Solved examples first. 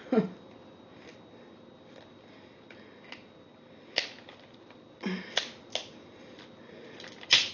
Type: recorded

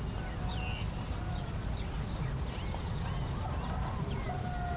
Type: recorded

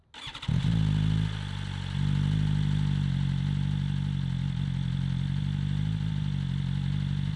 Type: recorded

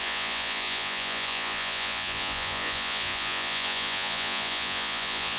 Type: remade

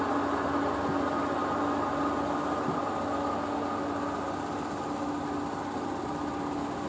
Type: recorded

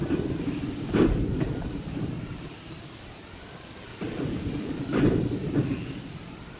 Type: remade